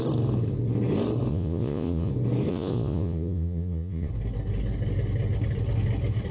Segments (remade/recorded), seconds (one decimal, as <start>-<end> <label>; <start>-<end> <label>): 0.0-1.3 recorded; 1.3-2.1 remade; 2.1-2.5 recorded; 2.5-4.1 remade; 4.1-6.3 recorded